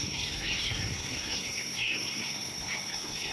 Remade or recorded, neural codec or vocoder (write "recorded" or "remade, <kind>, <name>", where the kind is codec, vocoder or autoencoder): remade, codec, SNAC